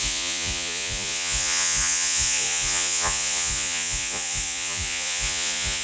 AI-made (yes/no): yes